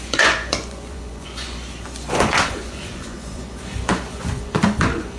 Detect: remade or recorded remade